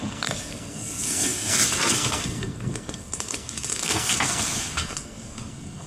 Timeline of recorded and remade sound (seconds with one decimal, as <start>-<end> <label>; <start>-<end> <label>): 0.0-5.9 remade